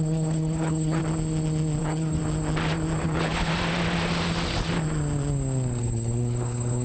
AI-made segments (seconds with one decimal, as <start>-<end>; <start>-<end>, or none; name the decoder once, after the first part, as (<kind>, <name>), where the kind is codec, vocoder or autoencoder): 0.0-1.0 (codec, HILCodec); 1.8-2.2; 3.0-3.5; 5.8-6.8

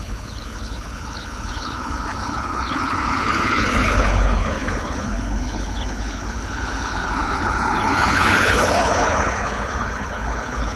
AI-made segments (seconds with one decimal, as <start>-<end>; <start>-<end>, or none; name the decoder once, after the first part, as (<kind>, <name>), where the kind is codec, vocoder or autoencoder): 0.0-10.8 (codec, HILCodec)

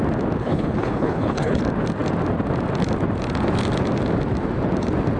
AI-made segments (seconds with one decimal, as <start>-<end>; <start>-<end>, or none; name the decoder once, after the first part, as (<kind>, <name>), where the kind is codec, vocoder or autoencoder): 0.4-1.6 (codec, HILCodec)

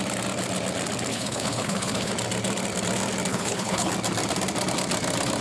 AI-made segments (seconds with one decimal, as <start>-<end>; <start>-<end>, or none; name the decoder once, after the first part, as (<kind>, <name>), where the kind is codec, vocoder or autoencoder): 1.1-2.1 (codec, HILCodec); 3.3-3.9